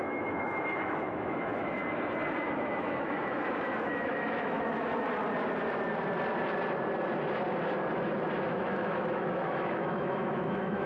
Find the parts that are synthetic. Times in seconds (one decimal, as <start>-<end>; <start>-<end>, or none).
0.0-1.8; 2.4-4.9; 8.5-10.9